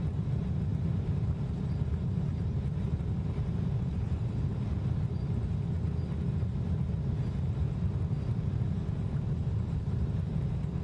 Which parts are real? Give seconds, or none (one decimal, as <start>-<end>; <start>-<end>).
0.0-0.7; 1.3-9.4; 10.3-10.8